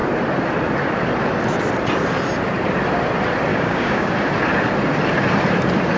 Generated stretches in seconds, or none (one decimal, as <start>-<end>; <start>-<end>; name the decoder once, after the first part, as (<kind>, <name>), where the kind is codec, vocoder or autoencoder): 3.5-4.1 (codec, DAC)